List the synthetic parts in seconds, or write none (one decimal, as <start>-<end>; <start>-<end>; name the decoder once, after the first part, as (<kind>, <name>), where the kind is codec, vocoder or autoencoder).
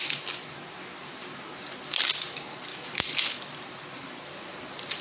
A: 2.7-3.4 (autoencoder, DAC-VAE)